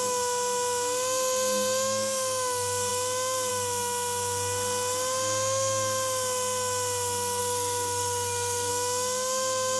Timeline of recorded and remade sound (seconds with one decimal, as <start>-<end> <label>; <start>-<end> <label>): 0.0-7.4 recorded; 7.4-8.7 remade; 8.7-9.8 recorded